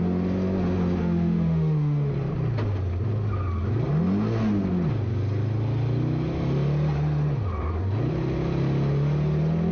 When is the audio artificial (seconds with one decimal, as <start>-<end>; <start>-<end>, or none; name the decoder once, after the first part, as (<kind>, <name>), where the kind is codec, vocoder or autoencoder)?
1.0-2.1 (autoencoder, DAC-VAE)